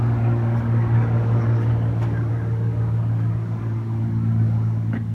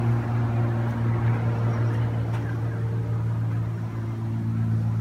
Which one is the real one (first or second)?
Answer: second